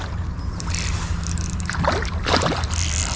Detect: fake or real real